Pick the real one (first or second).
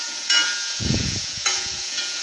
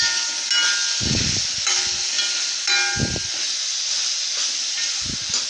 second